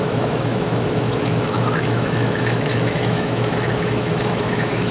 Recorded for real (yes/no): no